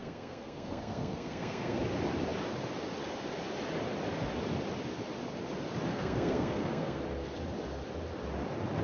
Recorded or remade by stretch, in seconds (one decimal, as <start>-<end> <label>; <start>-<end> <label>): 0.0-1.8 remade; 1.8-5.9 recorded; 5.9-7.0 remade; 7.0-8.8 recorded